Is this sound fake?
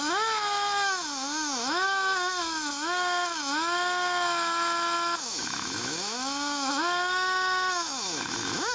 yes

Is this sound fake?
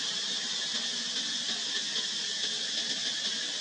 no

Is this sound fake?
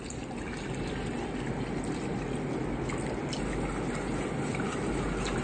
no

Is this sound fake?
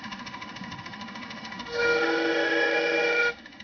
yes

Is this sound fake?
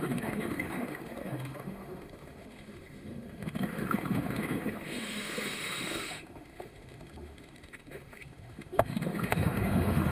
yes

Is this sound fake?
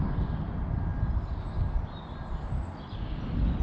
no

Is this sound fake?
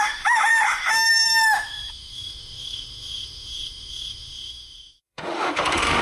yes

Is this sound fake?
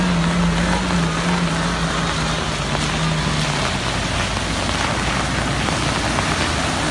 no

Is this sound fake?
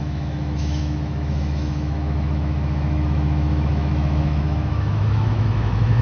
yes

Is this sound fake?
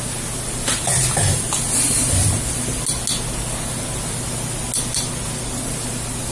no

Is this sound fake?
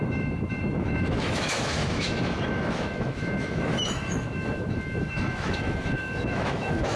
yes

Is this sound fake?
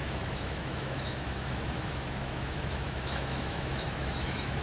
yes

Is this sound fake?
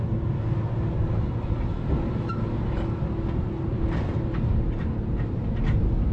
no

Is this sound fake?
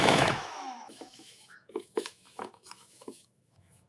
yes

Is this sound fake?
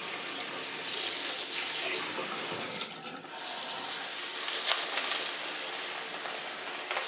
no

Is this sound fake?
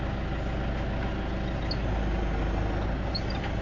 no